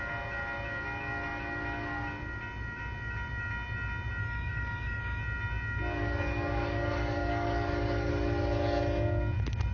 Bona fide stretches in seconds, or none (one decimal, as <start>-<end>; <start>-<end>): 0.0-4.2; 5.2-6.0; 8.1-9.7